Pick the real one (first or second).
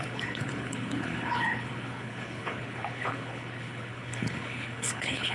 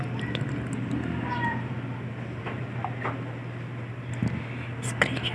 second